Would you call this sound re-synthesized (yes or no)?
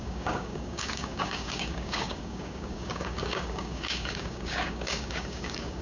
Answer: yes